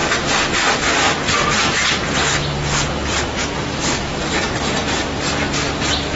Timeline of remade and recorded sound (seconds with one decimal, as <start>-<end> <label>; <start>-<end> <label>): 0.0-3.6 recorded; 3.6-4.2 remade; 4.2-6.2 recorded